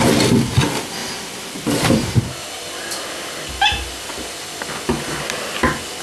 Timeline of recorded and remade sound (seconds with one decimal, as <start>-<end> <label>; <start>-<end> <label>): 0.0-1.0 recorded; 1.0-2.2 remade; 2.2-6.0 recorded

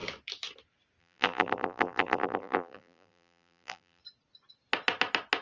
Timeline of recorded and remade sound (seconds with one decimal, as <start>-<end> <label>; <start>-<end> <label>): 0.0-1.0 recorded; 1.0-4.0 remade; 4.0-5.4 recorded

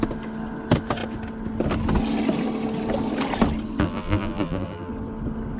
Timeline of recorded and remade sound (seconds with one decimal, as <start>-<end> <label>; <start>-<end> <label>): 0.0-3.8 recorded; 3.8-4.9 remade; 4.9-5.6 recorded

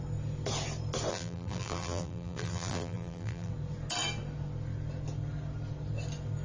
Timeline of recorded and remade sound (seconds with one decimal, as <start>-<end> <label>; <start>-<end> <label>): 0.0-1.1 recorded; 1.1-3.5 remade; 3.5-6.4 recorded

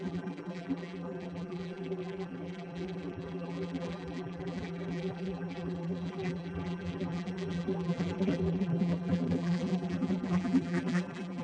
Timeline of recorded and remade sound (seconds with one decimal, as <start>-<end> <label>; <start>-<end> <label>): 0.0-11.4 remade

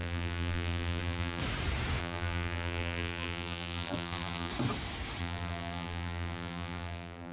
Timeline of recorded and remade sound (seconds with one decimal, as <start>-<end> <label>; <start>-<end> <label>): 0.0-1.4 remade; 1.4-2.0 recorded; 2.0-4.5 remade; 4.5-5.2 recorded; 5.2-7.3 remade